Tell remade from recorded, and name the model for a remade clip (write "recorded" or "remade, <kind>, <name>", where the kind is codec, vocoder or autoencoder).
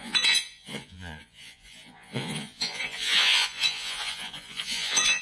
remade, vocoder, Vocos